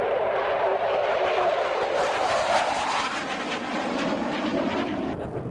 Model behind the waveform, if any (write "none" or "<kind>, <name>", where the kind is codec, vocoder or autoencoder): none